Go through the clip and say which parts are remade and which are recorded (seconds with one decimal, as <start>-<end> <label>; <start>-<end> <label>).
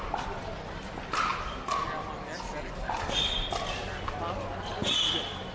0.0-5.5 recorded